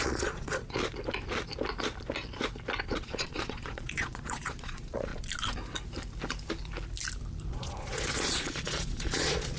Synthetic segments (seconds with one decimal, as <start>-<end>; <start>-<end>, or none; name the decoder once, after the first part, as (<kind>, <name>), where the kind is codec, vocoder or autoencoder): 0.0-0.8 (vocoder, Vocos); 2.8-5.1; 7.5-9.6